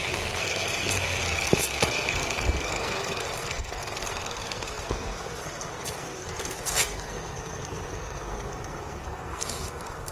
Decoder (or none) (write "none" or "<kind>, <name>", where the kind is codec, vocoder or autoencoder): codec, SNAC